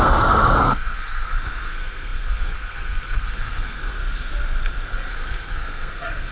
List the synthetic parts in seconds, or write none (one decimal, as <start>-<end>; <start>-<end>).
0.0-4.0; 5.1-6.3